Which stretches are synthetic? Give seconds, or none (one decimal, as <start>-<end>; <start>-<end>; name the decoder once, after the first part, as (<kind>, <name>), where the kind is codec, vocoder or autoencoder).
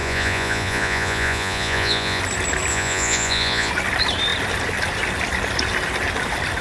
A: 0.0-2.2 (vocoder, Vocos); 2.7-3.7